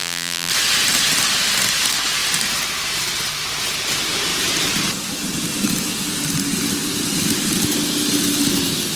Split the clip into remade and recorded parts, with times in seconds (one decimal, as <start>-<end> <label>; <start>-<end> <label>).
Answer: 0.0-0.5 remade; 0.5-9.0 recorded

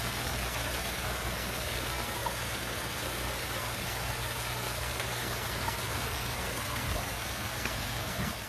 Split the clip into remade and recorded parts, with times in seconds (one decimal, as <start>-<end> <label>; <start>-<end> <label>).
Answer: 0.0-8.5 remade

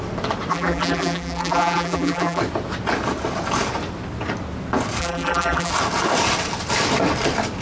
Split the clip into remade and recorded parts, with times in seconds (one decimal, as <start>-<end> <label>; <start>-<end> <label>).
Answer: 0.0-0.5 recorded; 0.5-2.4 remade; 2.4-5.0 recorded; 5.0-5.7 remade; 5.7-7.6 recorded

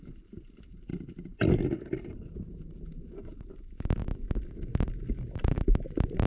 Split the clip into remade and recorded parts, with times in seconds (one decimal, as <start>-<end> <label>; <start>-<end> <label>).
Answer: 0.0-0.9 remade; 0.9-3.1 recorded; 3.1-4.0 remade; 4.0-4.5 recorded; 4.5-6.3 remade

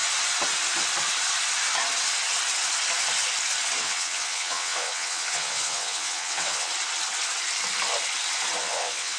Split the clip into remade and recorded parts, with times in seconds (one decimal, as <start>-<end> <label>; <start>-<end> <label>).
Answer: 0.0-3.8 recorded; 3.8-6.7 remade; 6.7-8.6 recorded; 8.6-9.2 remade